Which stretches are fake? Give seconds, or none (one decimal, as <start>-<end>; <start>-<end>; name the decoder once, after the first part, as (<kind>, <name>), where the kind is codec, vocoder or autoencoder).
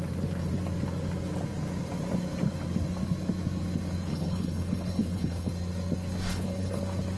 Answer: 4.1-5.5 (codec, HILCodec); 6.3-6.8